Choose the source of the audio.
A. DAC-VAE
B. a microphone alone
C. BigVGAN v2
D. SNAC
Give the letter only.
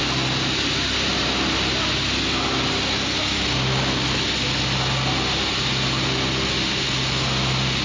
B